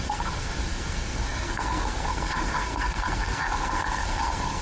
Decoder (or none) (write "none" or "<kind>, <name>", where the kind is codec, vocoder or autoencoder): codec, SNAC